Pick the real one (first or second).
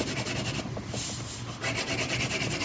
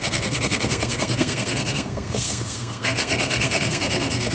first